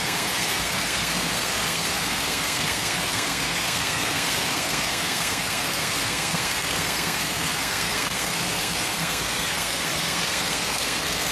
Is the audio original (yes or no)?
no